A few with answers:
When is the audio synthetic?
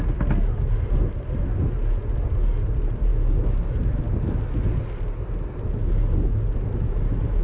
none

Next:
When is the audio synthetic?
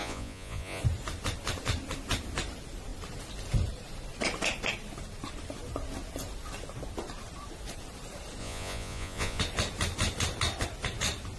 0.0-0.8 (vocoder, Vocos); 8.4-9.4